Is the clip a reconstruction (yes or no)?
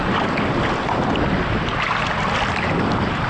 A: no